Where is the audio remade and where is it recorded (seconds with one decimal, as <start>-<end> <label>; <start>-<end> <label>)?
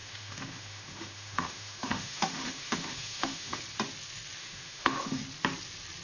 0.0-3.6 remade; 3.6-4.4 recorded; 4.4-5.2 remade; 5.2-6.0 recorded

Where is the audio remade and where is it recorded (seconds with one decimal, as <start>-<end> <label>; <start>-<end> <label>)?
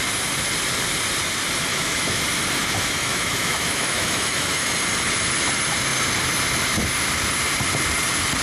0.0-1.7 recorded; 1.7-2.2 remade; 2.2-2.6 recorded; 2.6-4.7 remade; 4.7-8.4 recorded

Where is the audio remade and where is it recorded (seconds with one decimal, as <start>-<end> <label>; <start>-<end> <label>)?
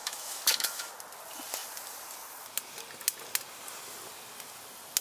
0.0-0.9 remade; 0.9-5.0 recorded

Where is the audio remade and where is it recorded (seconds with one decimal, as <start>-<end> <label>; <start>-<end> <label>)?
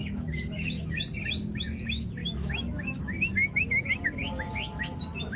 0.0-0.9 remade; 0.9-2.2 recorded; 2.2-3.0 remade; 3.0-5.4 recorded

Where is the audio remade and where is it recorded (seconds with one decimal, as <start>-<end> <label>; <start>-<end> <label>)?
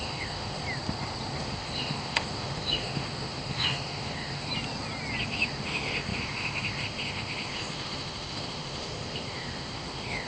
0.0-0.6 remade; 0.6-1.4 recorded; 1.4-4.5 remade; 4.5-5.2 recorded; 5.2-10.3 remade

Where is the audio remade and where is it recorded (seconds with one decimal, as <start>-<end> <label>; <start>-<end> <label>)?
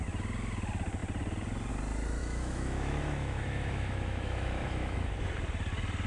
0.0-2.2 recorded; 2.2-5.2 remade; 5.2-6.1 recorded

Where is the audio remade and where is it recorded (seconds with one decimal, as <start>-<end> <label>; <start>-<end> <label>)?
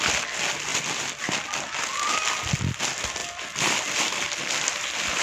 0.0-5.2 recorded